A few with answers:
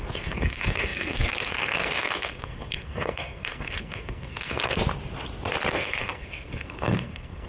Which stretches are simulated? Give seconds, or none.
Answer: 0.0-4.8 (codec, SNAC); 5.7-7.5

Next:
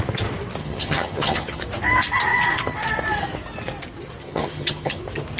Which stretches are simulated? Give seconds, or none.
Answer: 0.6-1.6 (vocoder, HiFi-GAN); 4.2-5.0

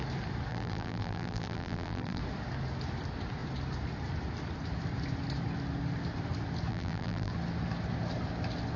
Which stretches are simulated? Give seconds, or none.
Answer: 0.5-2.2 (vocoder, BigVGAN v2); 6.7-7.3